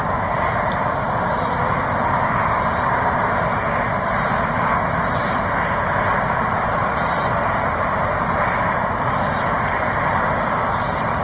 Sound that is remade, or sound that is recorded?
recorded